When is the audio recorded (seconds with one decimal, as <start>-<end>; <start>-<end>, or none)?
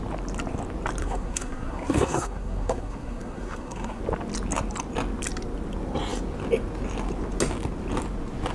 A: 0.0-1.0; 4.0-8.5